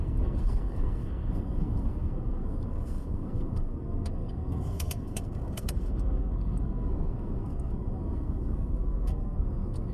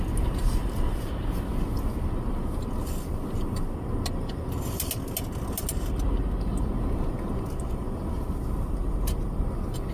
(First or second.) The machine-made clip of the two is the first